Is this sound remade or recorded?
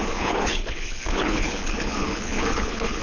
remade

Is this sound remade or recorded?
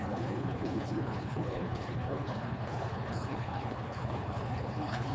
remade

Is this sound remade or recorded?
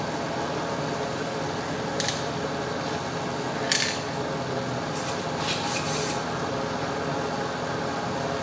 recorded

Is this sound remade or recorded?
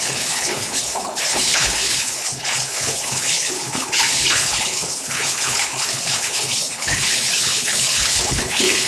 remade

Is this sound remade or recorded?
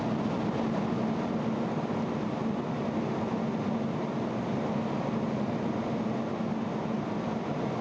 recorded